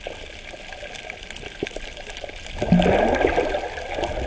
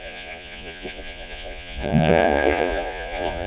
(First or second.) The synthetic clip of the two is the second